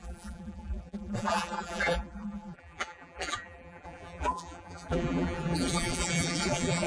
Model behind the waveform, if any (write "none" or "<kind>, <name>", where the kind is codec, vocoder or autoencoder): vocoder, BigVGAN v2